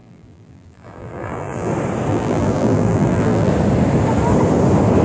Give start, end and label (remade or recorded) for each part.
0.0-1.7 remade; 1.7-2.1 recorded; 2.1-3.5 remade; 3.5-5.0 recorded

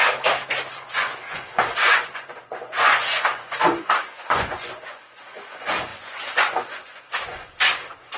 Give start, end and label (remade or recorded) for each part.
0.0-0.7 recorded; 0.7-8.2 remade